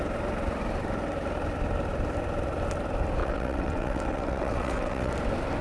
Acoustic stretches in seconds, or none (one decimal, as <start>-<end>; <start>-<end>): 0.0-3.2; 5.1-5.6